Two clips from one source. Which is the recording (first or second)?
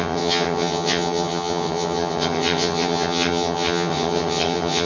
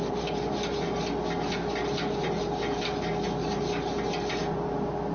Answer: second